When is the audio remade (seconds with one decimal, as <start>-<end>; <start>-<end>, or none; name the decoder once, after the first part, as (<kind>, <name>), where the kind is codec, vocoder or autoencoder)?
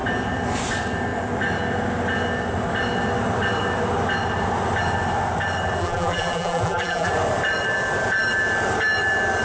5.8-7.1 (vocoder, BigVGAN v2)